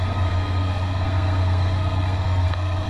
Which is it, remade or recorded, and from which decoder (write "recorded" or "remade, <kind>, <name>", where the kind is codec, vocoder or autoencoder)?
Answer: remade, codec, SNAC